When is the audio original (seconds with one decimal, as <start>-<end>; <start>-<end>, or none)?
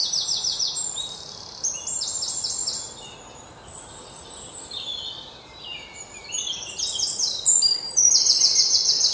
0.0-0.9; 2.6-4.5